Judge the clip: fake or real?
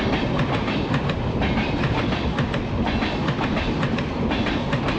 real